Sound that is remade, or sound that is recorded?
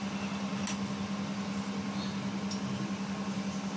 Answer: recorded